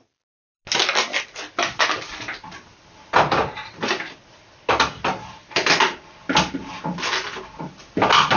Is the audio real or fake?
real